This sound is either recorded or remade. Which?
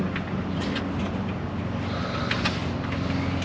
recorded